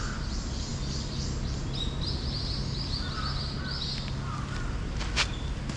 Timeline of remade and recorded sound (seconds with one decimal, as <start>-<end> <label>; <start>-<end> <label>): 0.0-5.8 recorded

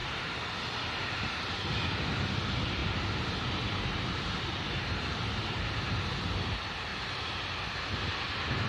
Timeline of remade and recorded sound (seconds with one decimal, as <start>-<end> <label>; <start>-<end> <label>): 0.0-2.8 remade; 2.8-3.3 recorded; 3.3-6.9 remade; 6.9-7.8 recorded; 7.8-8.7 remade

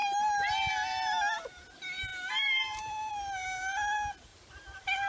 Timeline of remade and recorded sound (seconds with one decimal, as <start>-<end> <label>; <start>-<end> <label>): 0.0-0.7 remade; 0.7-2.1 recorded; 2.1-3.1 remade; 3.1-4.3 recorded; 4.3-5.1 remade

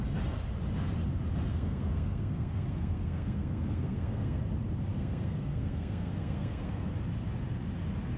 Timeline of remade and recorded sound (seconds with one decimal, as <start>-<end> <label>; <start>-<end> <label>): 0.0-1.5 recorded; 1.5-4.4 remade; 4.4-4.9 recorded; 4.9-6.9 remade; 6.9-8.2 recorded

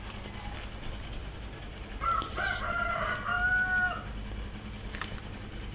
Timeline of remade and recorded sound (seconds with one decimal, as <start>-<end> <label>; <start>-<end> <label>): 0.0-5.7 recorded

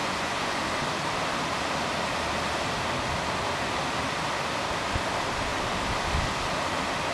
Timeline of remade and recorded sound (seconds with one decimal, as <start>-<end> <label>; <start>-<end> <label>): 0.0-0.6 remade; 0.6-7.1 recorded

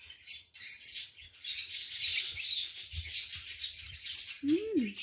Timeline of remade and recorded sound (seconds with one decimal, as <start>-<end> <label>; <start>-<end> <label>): 0.0-5.0 recorded